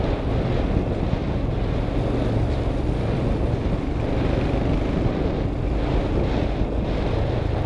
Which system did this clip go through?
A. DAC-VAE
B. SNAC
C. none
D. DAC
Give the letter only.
C